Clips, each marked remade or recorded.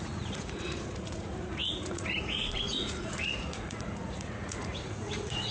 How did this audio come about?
remade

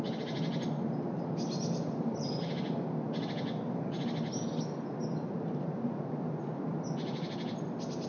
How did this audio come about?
recorded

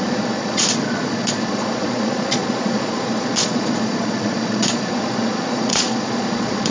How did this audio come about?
remade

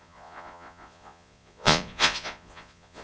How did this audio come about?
remade